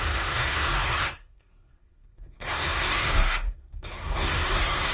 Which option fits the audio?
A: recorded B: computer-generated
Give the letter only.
B